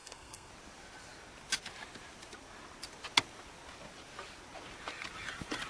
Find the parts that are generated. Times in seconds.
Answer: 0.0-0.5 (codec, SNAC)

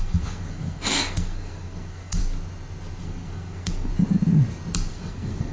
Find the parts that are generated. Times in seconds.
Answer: 0.0-2.2 (codec, SNAC); 3.0-3.9; 4.9-5.5